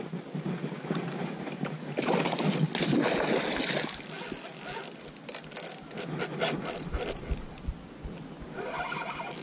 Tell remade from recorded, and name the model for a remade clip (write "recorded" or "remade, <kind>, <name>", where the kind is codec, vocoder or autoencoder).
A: recorded